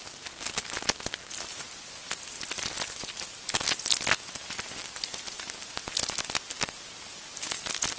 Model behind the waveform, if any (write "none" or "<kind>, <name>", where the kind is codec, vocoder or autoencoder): none